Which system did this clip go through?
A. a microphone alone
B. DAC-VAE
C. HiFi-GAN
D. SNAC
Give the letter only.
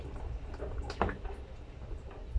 A